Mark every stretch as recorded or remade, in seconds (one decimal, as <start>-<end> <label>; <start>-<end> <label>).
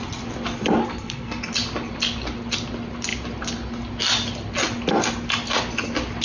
0.0-0.8 recorded; 0.8-1.4 remade; 1.4-6.2 recorded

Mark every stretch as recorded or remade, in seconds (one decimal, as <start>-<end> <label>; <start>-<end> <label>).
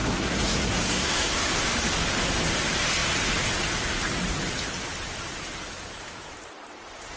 0.0-1.3 remade; 1.3-7.2 recorded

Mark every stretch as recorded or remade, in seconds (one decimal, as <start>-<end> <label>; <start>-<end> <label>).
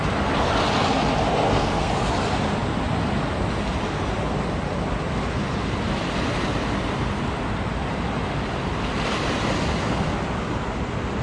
0.0-1.3 recorded; 1.3-1.9 remade; 1.9-11.2 recorded